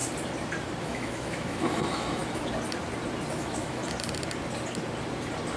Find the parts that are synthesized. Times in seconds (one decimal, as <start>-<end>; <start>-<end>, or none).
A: 0.8-2.2; 3.3-3.8